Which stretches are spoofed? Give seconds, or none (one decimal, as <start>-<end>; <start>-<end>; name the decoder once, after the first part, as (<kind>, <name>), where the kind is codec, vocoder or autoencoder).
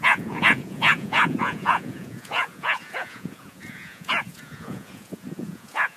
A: 0.0-6.0 (vocoder, Vocos)